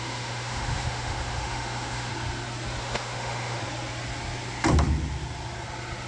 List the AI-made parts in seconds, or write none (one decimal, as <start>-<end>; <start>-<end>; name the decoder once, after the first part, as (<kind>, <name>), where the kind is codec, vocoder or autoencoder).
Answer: 0.0-2.1 (autoencoder, DAC-VAE); 2.8-3.6